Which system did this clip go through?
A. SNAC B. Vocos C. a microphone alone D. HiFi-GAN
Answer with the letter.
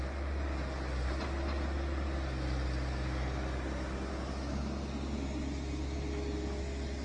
C